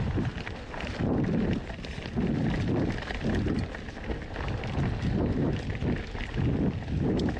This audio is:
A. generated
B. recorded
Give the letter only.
B